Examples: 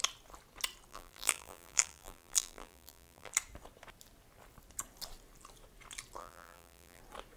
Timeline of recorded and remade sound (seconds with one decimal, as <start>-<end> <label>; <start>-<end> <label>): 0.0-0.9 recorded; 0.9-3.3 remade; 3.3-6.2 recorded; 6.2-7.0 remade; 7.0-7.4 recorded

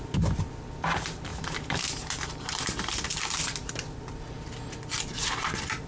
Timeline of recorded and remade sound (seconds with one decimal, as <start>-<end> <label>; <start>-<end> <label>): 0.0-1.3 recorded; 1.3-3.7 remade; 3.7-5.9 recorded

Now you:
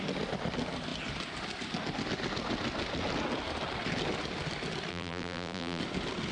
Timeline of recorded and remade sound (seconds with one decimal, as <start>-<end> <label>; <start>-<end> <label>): 0.0-4.9 recorded; 4.9-5.8 remade; 5.8-6.3 recorded